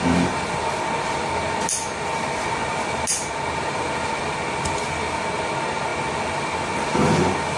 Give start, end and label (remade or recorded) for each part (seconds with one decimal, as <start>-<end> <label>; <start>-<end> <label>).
0.0-2.6 recorded; 2.6-3.3 remade; 3.3-7.6 recorded